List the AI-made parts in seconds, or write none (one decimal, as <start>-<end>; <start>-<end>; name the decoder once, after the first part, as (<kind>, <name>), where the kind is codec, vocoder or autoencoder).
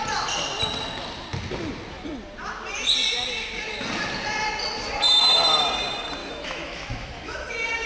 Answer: 6.2-7.5 (autoencoder, DAC-VAE)